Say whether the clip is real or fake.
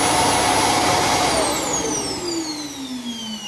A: real